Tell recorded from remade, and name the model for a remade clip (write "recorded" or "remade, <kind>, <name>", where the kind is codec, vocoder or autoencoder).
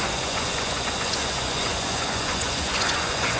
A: remade, vocoder, Vocos